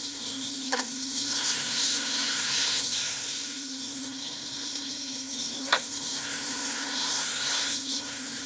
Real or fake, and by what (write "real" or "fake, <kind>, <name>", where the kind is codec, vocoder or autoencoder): fake, codec, SNAC